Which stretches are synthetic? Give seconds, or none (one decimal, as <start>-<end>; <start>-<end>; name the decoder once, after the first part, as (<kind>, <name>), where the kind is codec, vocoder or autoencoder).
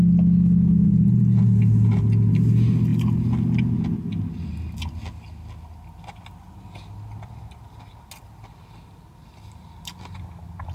none